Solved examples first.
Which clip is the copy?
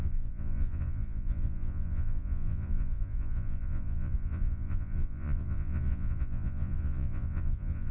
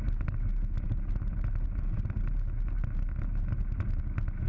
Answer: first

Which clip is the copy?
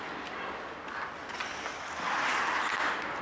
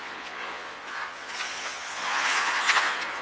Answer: second